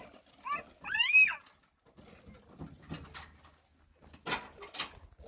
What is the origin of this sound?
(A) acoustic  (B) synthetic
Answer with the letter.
A